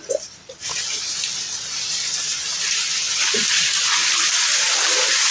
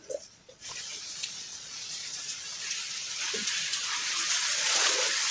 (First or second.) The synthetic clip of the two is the second